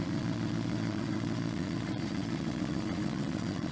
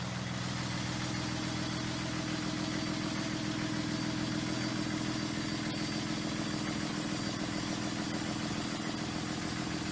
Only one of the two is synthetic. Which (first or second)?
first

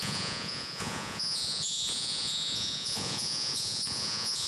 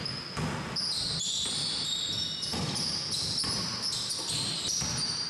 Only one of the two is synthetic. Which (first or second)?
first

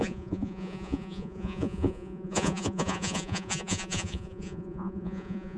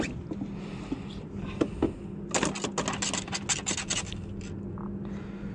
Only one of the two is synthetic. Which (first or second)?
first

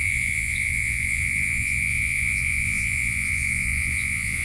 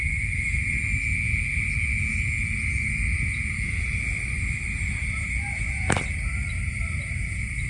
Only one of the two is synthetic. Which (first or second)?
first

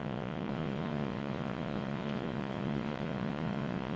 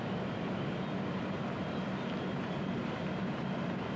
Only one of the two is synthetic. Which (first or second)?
first